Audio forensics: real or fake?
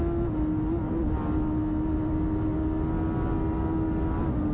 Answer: real